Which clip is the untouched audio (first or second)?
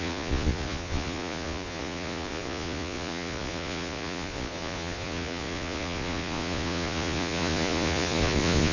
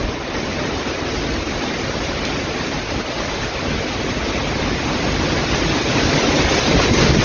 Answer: second